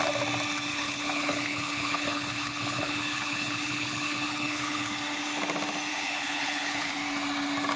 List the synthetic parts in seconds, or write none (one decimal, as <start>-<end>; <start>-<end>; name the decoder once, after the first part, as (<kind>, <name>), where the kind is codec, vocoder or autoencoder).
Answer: 0.7-4.9 (codec, HILCodec); 5.9-6.9